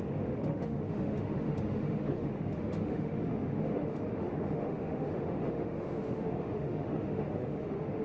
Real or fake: fake